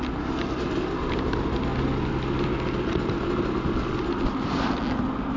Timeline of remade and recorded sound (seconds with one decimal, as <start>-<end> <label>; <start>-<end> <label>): 0.0-5.4 recorded